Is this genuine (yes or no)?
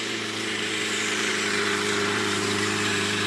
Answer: no